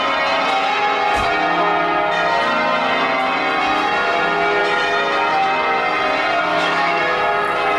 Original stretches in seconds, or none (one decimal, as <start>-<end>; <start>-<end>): 0.0-6.5; 7.0-7.8